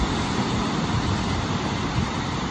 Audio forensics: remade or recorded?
recorded